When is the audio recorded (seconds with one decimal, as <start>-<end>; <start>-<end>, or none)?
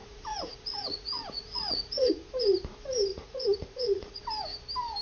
2.1-3.1; 4.2-5.0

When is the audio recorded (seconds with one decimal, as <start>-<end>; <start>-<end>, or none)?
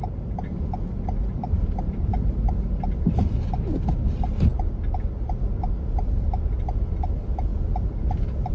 0.0-8.5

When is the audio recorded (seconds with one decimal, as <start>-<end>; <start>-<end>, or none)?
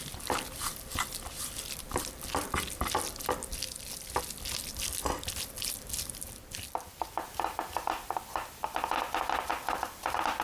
3.5-4.7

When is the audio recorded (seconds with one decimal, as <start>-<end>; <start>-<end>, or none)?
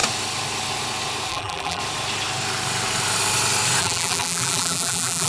0.0-1.3; 1.8-3.8